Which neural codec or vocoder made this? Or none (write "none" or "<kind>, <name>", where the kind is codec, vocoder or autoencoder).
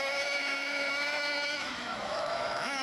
autoencoder, DAC-VAE